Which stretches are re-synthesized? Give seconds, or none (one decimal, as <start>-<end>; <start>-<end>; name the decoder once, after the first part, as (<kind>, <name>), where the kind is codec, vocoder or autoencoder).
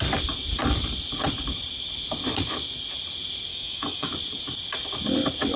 3.5-4.1 (autoencoder, DAC-VAE)